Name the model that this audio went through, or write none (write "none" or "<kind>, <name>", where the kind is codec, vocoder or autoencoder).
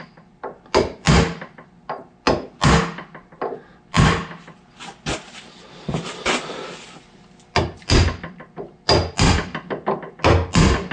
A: none